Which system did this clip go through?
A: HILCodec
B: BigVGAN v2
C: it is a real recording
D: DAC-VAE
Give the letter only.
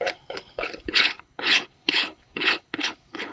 A